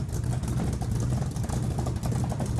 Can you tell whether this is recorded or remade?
recorded